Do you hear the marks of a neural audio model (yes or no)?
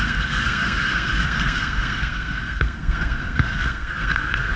yes